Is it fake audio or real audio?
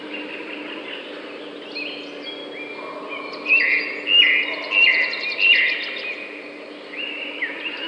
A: real